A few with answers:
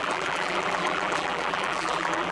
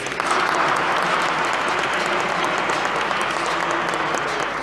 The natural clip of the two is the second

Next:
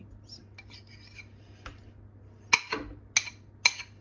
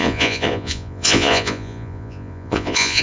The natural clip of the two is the first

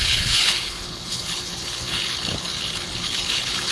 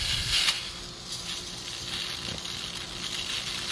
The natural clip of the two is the second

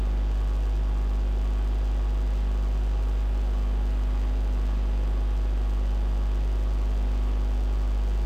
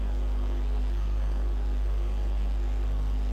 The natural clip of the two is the first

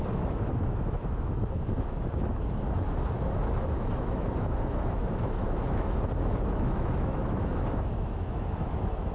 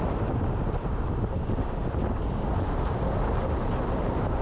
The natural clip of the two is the second